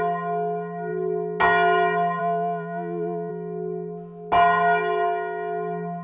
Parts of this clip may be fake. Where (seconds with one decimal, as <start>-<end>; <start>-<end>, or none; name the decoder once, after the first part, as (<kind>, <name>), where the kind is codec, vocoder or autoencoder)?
2.2-3.3 (vocoder, Vocos)